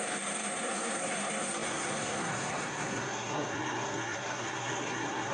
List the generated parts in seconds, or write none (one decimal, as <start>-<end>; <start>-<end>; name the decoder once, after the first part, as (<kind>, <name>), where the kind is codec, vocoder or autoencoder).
0.0-5.3 (codec, SNAC)